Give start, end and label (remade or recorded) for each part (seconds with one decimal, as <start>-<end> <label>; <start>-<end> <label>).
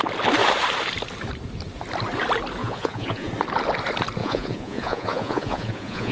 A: 0.0-2.6 recorded; 2.6-3.3 remade; 3.3-4.2 recorded; 4.2-6.1 remade